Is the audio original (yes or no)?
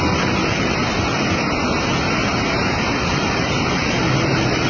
no